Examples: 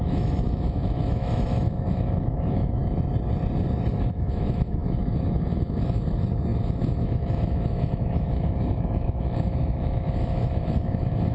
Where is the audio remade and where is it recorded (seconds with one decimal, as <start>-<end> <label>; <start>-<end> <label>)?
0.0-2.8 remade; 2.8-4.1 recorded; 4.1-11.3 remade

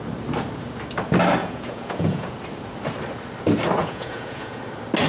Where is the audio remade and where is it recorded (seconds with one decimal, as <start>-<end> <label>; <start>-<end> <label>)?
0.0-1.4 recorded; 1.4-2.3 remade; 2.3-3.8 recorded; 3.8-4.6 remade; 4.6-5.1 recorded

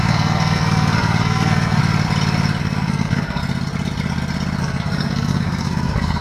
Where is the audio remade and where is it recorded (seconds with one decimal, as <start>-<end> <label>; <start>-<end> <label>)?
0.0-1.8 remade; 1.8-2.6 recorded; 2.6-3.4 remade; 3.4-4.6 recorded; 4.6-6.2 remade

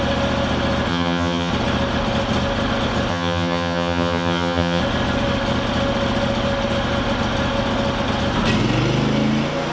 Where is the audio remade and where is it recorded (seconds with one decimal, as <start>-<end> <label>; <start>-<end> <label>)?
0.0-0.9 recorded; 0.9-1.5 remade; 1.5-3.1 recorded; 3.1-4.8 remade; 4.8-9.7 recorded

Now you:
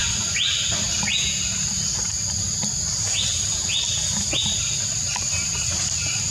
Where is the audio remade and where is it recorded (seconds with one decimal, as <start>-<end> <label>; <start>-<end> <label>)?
0.0-6.3 recorded

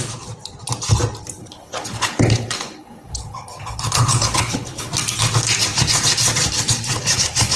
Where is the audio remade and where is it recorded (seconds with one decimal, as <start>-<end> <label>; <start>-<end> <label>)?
0.0-1.4 recorded; 1.4-4.9 remade; 4.9-7.0 recorded; 7.0-7.6 remade